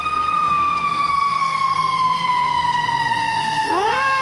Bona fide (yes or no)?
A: no